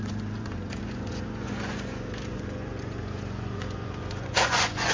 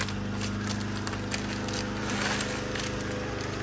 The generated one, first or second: first